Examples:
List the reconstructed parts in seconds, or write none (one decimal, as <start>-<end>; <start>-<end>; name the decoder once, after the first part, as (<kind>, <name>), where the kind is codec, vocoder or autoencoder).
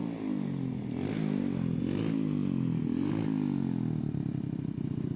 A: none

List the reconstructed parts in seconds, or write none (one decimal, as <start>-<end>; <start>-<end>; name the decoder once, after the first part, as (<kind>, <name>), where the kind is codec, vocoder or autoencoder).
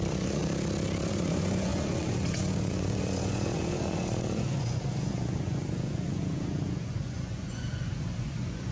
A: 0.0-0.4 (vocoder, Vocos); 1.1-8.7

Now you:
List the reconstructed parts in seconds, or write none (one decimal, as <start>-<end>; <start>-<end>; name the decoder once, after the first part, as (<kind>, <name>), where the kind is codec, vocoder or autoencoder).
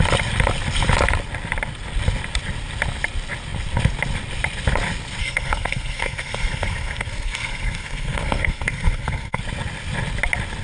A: 5.2-9.4 (codec, SNAC)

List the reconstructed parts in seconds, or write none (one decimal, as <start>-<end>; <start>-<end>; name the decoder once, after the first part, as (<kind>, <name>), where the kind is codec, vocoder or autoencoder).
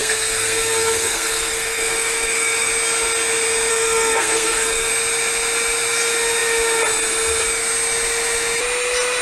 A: 0.0-2.7 (codec, SNAC); 3.7-4.9